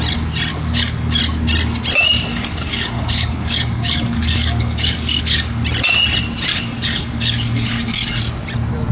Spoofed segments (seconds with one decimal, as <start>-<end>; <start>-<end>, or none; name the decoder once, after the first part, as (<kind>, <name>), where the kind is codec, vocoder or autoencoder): 0.5-1.2 (codec, DAC); 2.3-5.6; 6.5-8.2